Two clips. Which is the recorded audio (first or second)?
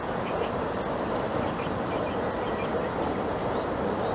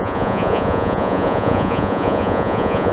first